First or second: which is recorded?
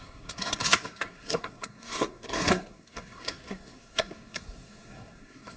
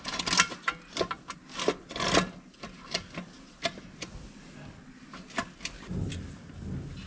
second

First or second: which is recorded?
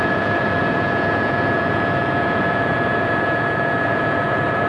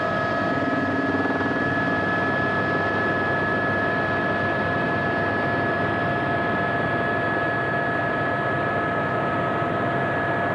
second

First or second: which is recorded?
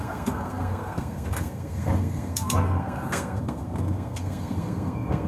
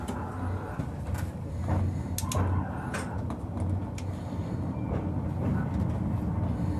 second